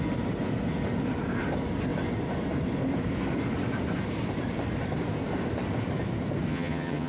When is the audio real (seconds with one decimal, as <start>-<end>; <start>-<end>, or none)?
0.0-6.5